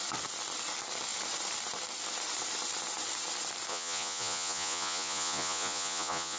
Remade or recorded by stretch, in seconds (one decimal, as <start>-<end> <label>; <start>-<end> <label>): 0.0-3.7 recorded; 3.7-6.4 remade